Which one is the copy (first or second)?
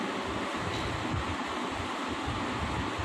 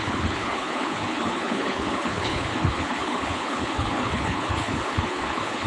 second